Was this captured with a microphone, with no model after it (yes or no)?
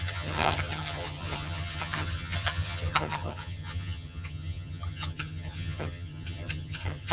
no